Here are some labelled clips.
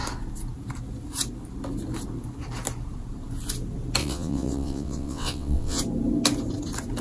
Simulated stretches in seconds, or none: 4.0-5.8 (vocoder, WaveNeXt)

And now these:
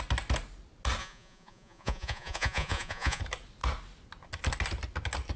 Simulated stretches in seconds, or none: 1.0-3.2 (vocoder, Vocos)

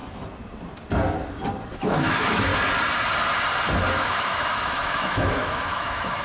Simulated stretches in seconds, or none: 1.7-2.5 (autoencoder, DAC-VAE); 3.9-6.2

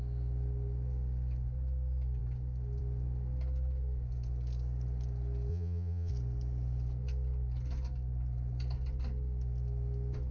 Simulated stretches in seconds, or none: 5.5-6.1 (vocoder, Vocos)

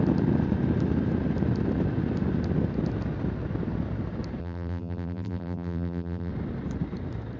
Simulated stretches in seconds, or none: 4.4-6.3 (vocoder, BigVGAN v2)